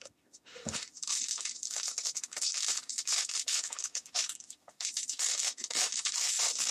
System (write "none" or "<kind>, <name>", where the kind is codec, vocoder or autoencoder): autoencoder, DAC-VAE